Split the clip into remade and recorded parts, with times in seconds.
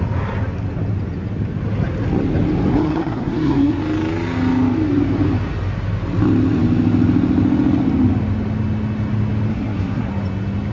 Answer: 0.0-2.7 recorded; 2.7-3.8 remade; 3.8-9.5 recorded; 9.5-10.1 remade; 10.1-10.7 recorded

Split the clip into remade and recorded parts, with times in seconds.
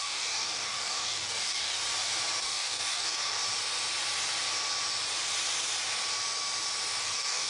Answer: 0.0-1.8 remade; 1.8-2.4 recorded; 2.4-3.4 remade; 3.4-7.0 recorded; 7.0-7.5 remade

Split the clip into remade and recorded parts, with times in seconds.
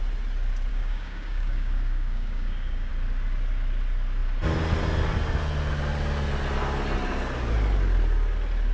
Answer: 0.0-0.7 recorded; 0.7-2.9 remade; 2.9-8.7 recorded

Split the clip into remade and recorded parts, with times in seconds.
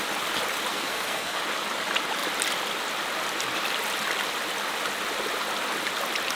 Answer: 0.0-0.7 recorded; 0.7-1.4 remade; 1.4-6.4 recorded